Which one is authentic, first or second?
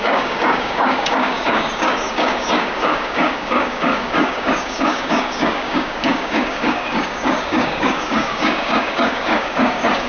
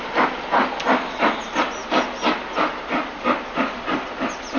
second